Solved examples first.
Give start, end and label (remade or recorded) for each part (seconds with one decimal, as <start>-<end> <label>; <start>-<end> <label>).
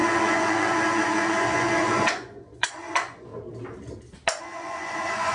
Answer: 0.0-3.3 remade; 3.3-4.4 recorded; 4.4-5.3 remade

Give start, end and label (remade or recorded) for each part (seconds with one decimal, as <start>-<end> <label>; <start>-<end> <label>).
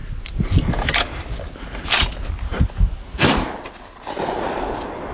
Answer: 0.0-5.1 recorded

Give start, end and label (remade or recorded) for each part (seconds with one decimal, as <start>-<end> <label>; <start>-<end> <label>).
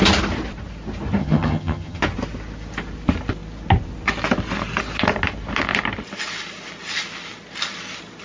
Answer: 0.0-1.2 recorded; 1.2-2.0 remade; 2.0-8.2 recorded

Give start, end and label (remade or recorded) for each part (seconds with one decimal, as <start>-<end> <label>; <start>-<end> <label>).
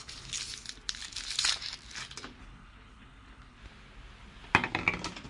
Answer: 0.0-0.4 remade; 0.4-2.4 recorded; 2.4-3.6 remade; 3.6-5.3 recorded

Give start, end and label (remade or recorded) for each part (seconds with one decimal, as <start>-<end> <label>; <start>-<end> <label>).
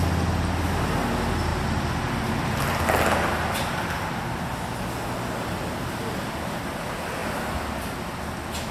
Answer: 0.0-8.7 recorded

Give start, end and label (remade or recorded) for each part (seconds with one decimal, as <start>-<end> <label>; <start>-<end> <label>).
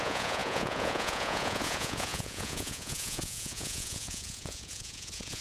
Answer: 0.0-5.4 remade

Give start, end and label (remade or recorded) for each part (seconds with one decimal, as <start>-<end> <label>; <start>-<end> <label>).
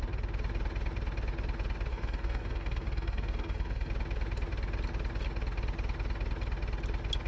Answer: 0.0-1.9 recorded; 1.9-3.9 remade; 3.9-7.3 recorded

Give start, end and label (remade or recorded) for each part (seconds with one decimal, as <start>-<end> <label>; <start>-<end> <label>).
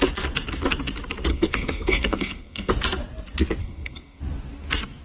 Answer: 0.0-1.3 recorded; 1.3-2.7 remade; 2.7-3.6 recorded; 3.6-4.2 remade; 4.2-5.0 recorded